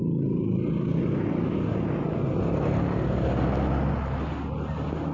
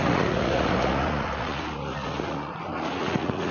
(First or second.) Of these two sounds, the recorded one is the first